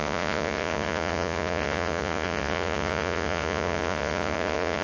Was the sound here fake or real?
fake